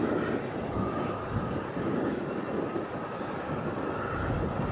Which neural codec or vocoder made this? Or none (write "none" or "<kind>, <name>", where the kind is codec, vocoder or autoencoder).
none